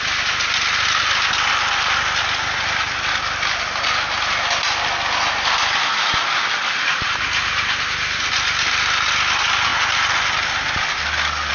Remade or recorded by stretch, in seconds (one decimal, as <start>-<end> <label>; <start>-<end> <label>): 0.0-11.5 recorded